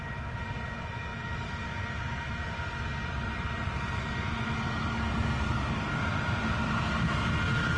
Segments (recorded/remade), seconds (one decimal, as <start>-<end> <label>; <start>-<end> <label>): 0.0-2.9 recorded; 2.9-3.4 remade; 3.4-5.2 recorded; 5.2-6.7 remade; 6.7-7.8 recorded